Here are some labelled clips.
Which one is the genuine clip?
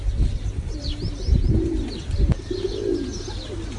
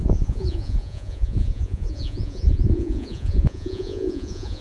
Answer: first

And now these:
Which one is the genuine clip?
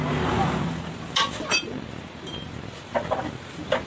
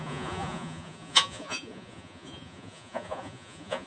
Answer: first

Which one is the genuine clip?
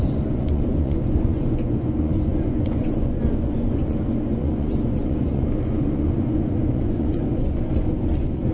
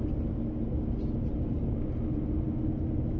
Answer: second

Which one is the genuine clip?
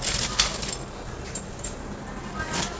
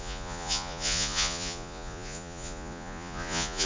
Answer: first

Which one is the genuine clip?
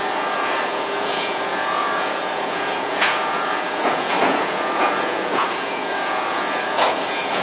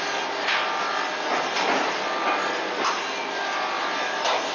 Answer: second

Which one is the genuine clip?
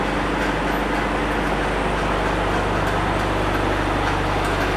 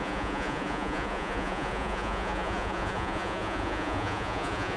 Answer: first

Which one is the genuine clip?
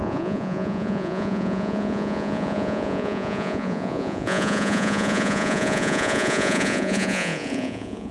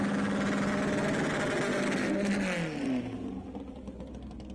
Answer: second